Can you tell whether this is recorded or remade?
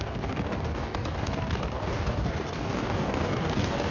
remade